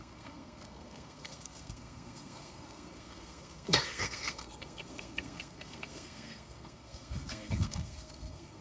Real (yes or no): no